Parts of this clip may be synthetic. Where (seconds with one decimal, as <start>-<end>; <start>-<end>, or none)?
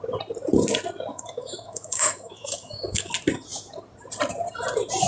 1.1-3.1